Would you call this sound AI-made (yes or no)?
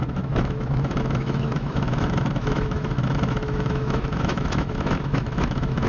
yes